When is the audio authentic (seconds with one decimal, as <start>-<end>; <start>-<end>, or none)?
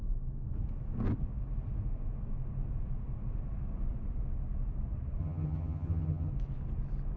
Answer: 0.0-5.2; 6.3-7.2